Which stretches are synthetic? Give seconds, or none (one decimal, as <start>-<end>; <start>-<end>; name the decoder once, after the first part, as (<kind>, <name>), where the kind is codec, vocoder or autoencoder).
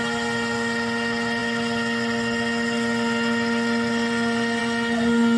none